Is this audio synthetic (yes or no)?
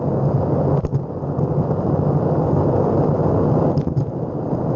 no